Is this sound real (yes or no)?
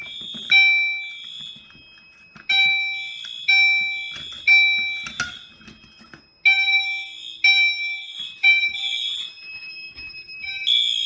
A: yes